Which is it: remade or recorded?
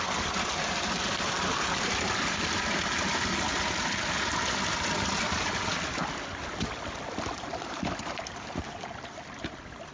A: recorded